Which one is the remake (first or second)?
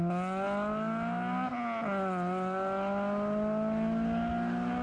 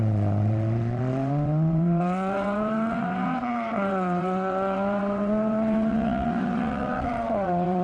second